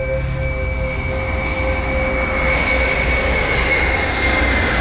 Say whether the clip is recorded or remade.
recorded